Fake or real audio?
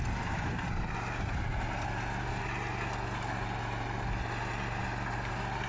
real